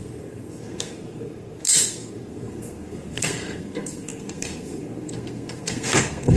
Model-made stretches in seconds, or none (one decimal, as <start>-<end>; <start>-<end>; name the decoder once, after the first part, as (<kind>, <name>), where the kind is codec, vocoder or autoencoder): 0.0-6.4 (codec, SNAC)